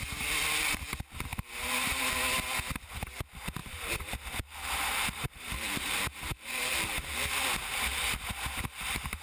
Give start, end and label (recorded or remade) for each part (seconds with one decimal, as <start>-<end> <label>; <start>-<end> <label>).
0.0-1.3 recorded; 1.3-2.1 remade; 2.1-3.6 recorded; 3.6-7.3 remade; 7.3-9.2 recorded